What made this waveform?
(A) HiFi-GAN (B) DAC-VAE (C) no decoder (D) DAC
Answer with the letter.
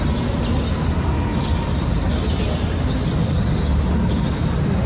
C